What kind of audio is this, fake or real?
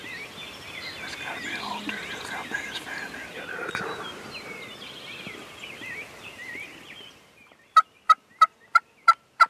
real